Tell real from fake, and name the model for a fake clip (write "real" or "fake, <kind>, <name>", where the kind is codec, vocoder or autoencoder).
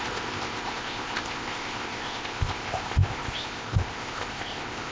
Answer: fake, codec, ZipCodec